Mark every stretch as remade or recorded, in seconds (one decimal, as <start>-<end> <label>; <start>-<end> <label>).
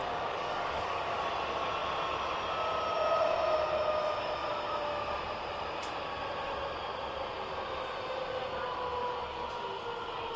0.0-1.2 remade; 1.2-9.0 recorded; 9.0-9.5 remade; 9.5-10.4 recorded